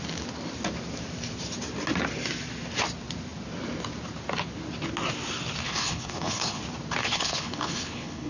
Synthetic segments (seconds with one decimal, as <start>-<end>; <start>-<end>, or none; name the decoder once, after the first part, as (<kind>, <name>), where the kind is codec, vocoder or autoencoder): 5.6-6.6 (codec, HILCodec); 7.0-8.3

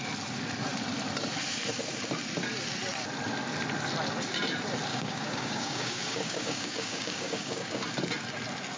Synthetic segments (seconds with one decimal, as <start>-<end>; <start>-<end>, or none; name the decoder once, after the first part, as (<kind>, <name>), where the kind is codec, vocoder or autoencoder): 4.9-7.8 (codec, DAC)

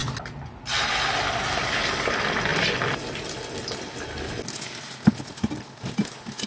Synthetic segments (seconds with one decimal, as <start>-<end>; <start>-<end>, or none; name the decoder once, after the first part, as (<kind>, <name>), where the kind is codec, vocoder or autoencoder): none